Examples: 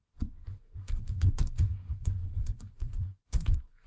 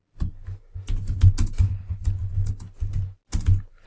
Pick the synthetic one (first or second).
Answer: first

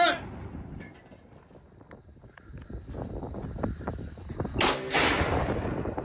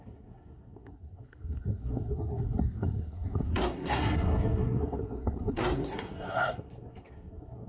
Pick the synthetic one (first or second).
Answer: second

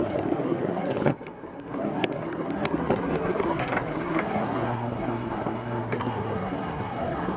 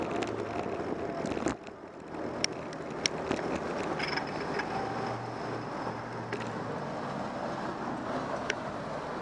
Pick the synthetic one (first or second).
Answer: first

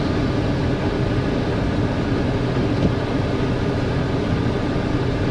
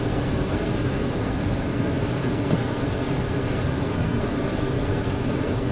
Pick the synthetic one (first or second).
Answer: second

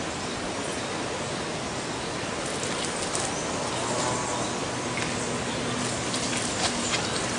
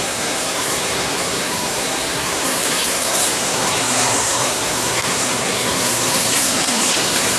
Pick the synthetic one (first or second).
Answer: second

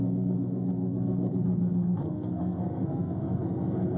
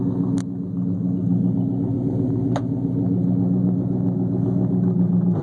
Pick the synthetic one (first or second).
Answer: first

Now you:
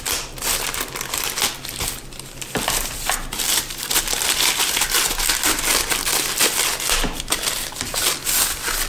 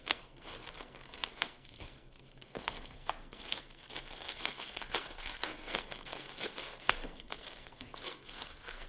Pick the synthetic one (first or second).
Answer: second